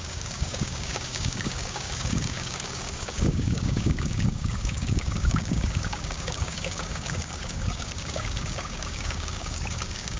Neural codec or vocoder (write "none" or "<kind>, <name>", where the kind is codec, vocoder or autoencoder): codec, DAC